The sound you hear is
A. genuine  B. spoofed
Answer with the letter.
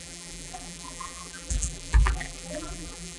B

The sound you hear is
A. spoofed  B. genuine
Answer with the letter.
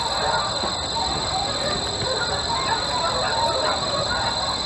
B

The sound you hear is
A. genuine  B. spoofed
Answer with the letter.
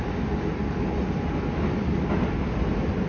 A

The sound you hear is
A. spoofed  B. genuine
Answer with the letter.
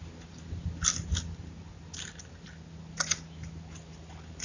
B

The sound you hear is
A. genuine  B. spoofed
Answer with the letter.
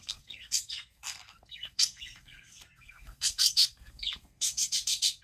B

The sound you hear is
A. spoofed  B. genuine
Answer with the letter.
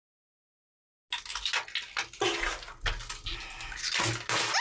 B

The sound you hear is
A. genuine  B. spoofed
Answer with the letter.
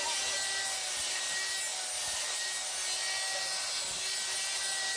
A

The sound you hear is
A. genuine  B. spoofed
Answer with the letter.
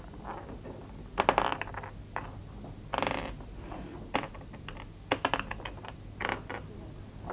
A